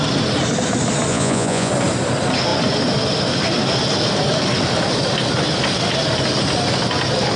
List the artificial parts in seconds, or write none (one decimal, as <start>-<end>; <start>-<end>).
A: 1.1-1.7